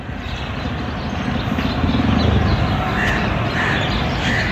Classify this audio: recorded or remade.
recorded